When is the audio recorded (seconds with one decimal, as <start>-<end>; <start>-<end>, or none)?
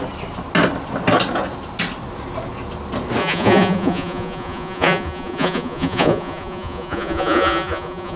0.0-3.2